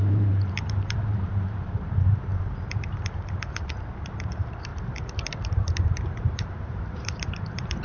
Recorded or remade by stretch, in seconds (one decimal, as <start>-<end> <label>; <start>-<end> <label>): 0.0-4.7 remade; 4.7-5.5 recorded; 5.5-7.8 remade